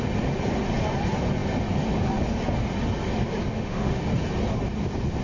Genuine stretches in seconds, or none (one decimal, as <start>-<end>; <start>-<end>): 0.0-3.5; 4.0-5.2